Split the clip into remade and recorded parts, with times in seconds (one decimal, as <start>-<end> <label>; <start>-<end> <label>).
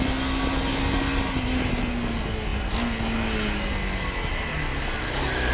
0.0-5.5 recorded